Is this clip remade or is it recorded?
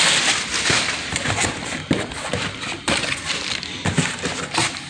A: remade